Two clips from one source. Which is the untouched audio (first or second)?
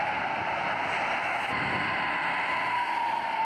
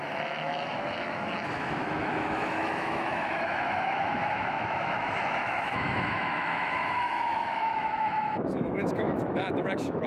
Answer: first